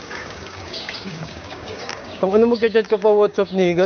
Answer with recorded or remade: remade